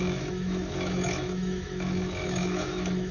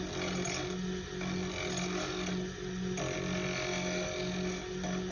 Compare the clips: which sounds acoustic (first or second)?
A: second